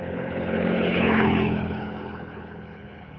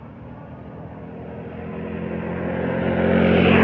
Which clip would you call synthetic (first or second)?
first